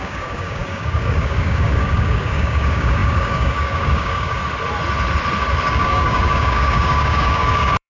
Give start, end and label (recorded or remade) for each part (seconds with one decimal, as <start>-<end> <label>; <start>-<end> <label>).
0.0-4.4 remade; 4.4-5.7 recorded; 5.7-7.9 remade